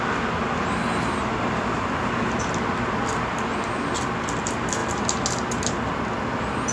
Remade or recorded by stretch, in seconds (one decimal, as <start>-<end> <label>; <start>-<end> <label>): 0.0-1.3 recorded; 1.3-1.9 remade; 1.9-6.7 recorded